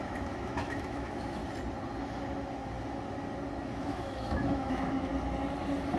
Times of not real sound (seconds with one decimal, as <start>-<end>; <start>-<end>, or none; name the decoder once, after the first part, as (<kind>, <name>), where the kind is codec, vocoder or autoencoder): 0.0-1.4 (autoencoder, DAC-VAE); 3.7-5.1

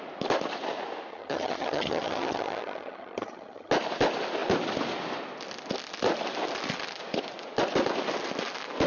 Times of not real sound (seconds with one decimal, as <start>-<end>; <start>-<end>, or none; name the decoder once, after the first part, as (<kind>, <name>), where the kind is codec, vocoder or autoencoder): 1.1-3.7 (vocoder, HiFi-GAN)

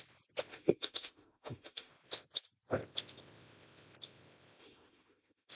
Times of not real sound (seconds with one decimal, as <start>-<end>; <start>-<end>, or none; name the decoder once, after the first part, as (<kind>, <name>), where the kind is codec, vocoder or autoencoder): 0.5-1.9 (autoencoder, DAC-VAE); 4.6-5.5

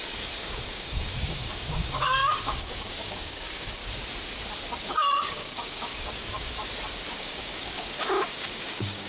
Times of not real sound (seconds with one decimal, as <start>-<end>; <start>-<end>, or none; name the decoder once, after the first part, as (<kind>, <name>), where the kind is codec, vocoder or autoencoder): 0.0-3.8 (codec, DAC); 4.9-6.6; 7.1-9.1

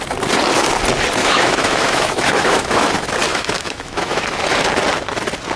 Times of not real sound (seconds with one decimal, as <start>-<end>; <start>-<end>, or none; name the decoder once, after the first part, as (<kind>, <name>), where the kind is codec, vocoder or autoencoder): 1.2-2.9 (autoencoder, DAC-VAE); 3.3-4.2